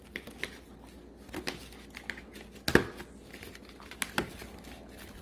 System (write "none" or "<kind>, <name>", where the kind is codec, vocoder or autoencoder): none